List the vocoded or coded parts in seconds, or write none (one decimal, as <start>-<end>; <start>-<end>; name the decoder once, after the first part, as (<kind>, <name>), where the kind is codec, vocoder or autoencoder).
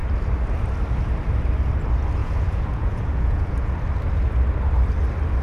2.2-3.7 (vocoder, Vocos)